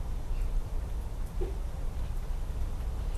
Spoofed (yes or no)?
no